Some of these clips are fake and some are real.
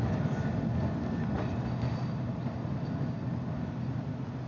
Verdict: real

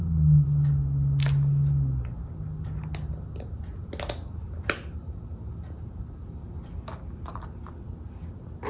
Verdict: real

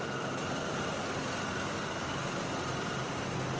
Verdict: real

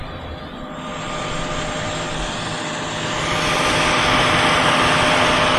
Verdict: real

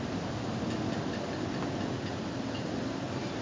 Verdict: real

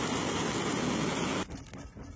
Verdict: fake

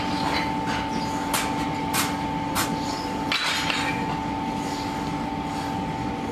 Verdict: real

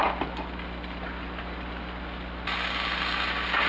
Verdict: real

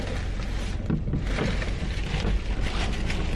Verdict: real